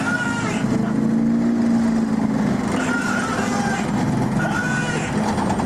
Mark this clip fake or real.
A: real